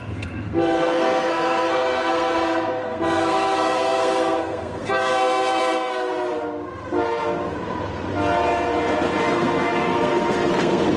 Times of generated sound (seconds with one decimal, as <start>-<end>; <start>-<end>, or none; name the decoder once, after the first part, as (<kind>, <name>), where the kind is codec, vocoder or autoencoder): 0.0-6.1 (codec, SNAC); 9.2-11.0